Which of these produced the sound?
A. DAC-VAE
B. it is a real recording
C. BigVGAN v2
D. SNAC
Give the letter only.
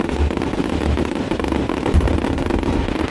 B